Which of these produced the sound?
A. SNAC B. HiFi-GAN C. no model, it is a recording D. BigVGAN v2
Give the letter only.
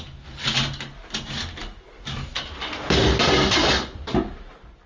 C